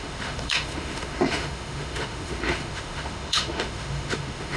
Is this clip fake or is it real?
fake